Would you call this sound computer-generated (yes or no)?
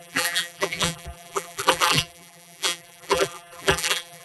yes